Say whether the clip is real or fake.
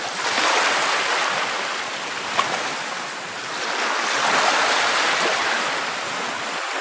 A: real